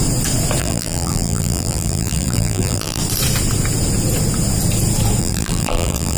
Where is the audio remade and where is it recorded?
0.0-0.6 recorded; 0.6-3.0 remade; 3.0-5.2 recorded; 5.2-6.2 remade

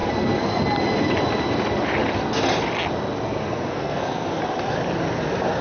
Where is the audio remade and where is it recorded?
0.0-0.6 remade; 0.6-3.4 recorded; 3.4-4.4 remade; 4.4-5.6 recorded

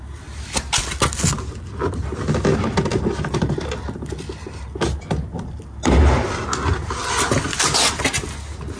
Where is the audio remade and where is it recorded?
0.0-8.8 recorded

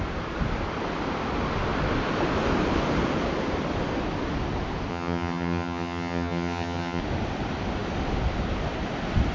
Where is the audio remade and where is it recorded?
0.0-4.9 recorded; 4.9-7.0 remade; 7.0-9.3 recorded

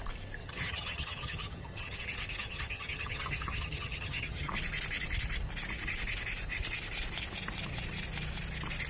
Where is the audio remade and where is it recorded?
0.0-0.4 recorded; 0.4-2.0 remade; 2.0-2.4 recorded; 2.4-4.5 remade; 4.5-8.9 recorded